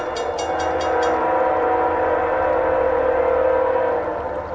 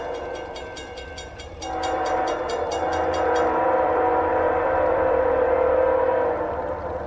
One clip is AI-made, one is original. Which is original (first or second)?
first